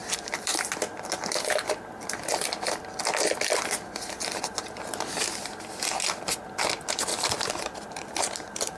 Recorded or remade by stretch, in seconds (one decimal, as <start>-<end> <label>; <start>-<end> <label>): 0.0-7.1 recorded; 7.1-8.8 remade